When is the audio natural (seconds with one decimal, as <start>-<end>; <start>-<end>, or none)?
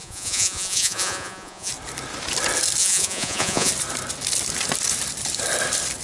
1.7-2.8; 3.7-6.0